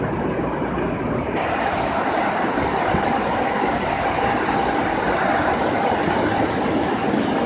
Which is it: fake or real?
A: real